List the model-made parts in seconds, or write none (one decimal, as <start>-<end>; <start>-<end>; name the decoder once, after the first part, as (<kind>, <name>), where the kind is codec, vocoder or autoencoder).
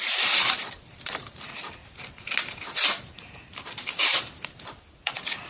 0.0-5.5 (vocoder, BigVGAN v2)